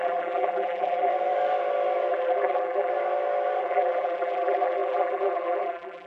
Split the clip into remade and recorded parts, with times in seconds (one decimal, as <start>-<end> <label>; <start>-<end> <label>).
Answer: 0.0-1.1 remade; 1.1-2.1 recorded; 2.1-2.9 remade; 2.9-3.6 recorded; 3.6-6.1 remade